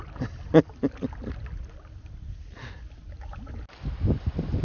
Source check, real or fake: real